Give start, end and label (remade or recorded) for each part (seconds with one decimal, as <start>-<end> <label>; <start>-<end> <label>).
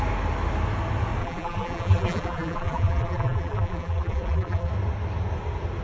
0.0-1.2 recorded; 1.2-4.7 remade; 4.7-5.8 recorded